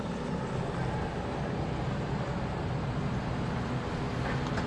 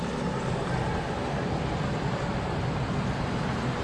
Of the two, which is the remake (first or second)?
second